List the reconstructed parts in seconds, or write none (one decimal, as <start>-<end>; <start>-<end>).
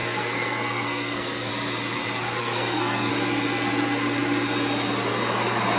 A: 0.0-1.5; 2.4-3.1